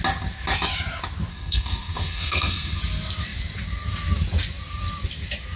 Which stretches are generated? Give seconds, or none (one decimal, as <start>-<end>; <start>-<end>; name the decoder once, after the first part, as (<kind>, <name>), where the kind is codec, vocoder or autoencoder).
1.3-2.8 (codec, SNAC)